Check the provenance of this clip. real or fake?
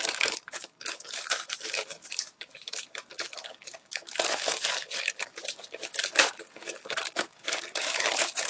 fake